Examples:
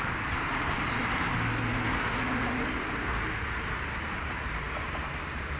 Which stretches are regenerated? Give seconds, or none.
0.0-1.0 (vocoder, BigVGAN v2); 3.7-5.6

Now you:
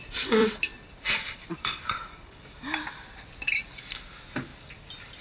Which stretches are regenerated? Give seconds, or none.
0.4-3.2 (vocoder, BigVGAN v2)

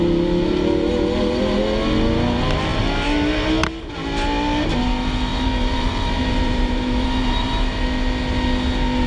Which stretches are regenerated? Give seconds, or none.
5.3-7.5 (vocoder, BigVGAN v2)

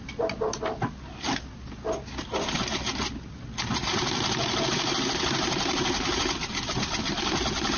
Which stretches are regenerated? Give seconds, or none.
3.6-7.8 (vocoder, BigVGAN v2)

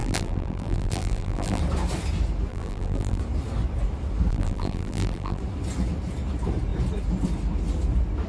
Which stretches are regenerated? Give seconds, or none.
0.0-1.6 (vocoder, BigVGAN v2); 2.5-3.2; 4.3-5.4